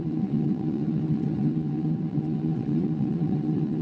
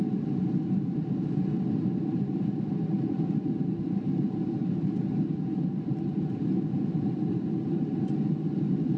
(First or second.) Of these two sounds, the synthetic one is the first